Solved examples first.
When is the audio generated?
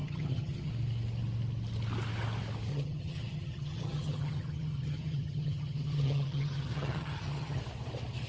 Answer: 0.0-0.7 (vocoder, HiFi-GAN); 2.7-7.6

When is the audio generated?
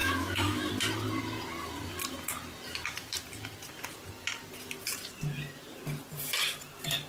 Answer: 0.0-0.7 (autoencoder, DAC-VAE)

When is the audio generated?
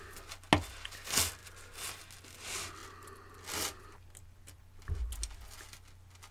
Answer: none